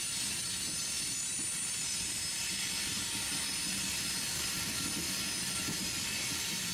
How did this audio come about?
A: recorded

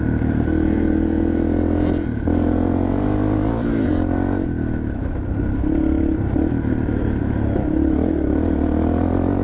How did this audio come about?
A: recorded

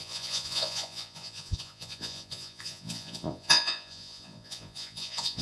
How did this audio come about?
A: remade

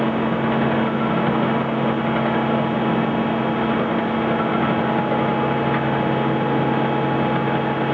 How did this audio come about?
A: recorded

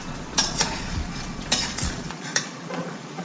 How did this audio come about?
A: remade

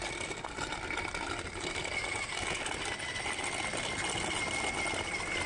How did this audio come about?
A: recorded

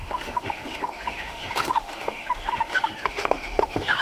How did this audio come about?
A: remade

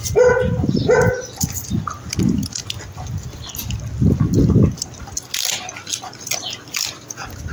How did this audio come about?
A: recorded